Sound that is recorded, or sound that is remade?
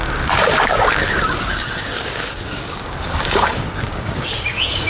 remade